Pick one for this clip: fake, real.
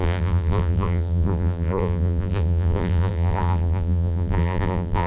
fake